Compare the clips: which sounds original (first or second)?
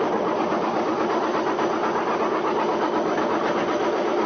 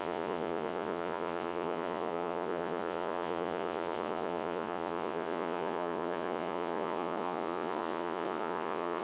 first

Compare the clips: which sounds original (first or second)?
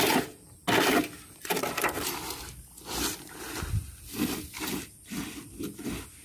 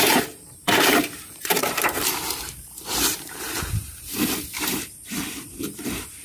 first